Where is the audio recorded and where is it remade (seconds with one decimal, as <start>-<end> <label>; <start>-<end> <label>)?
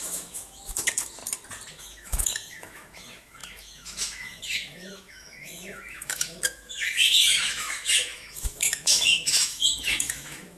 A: 0.0-1.2 remade; 1.2-1.7 recorded; 1.7-10.6 remade